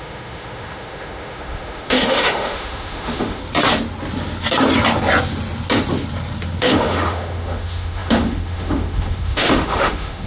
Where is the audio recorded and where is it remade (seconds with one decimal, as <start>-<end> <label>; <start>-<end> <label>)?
0.0-3.4 remade; 3.4-6.6 recorded; 6.6-10.3 remade